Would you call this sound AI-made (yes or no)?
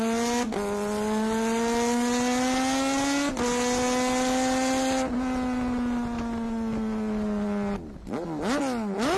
no